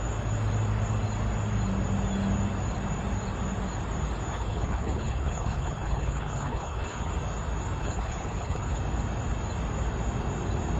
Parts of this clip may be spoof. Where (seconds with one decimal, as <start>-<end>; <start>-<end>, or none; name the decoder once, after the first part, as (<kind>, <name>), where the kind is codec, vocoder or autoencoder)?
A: 4.3-7.1 (codec, HILCodec); 7.8-8.8